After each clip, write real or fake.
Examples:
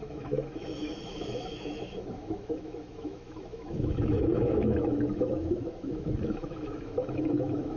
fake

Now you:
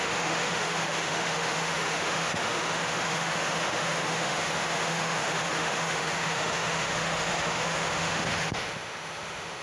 fake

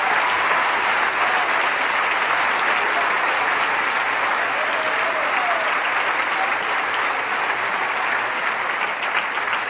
real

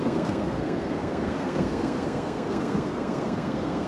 fake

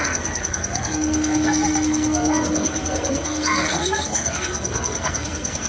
fake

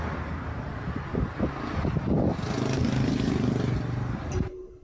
real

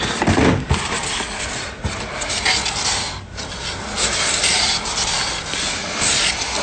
real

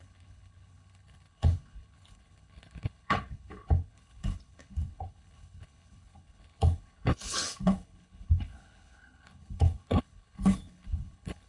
fake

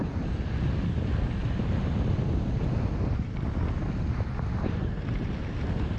real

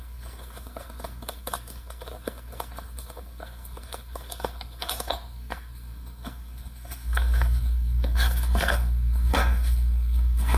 fake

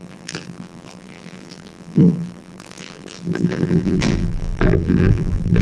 fake